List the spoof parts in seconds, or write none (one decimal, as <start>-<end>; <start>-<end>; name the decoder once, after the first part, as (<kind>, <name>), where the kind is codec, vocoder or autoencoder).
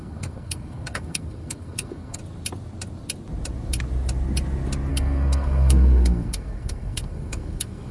0.0-2.2 (codec, SNAC); 4.9-7.9